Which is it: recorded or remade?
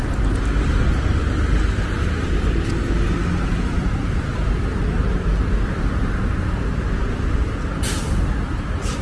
recorded